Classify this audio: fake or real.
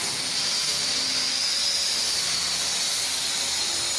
real